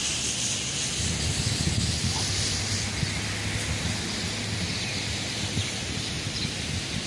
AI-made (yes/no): no